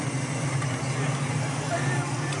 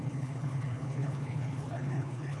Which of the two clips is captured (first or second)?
first